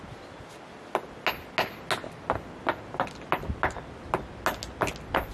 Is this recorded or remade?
recorded